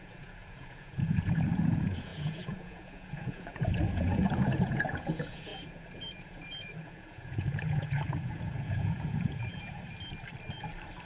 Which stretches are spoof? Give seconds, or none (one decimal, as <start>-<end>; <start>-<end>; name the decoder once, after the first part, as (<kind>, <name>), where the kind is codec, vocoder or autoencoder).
0.0-9.5 (vocoder, Vocos)